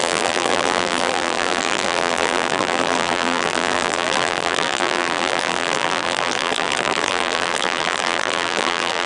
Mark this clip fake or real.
fake